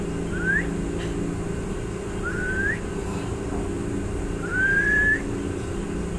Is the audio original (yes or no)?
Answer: yes